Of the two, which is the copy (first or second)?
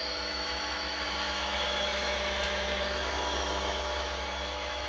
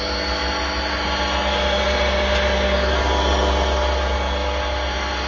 first